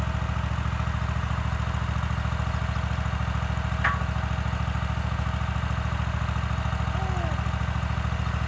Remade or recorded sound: recorded